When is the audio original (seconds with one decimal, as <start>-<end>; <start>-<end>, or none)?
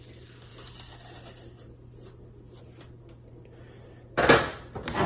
0.0-5.1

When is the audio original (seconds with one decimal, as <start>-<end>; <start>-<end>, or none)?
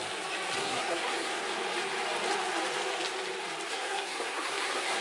0.0-0.6; 1.4-3.7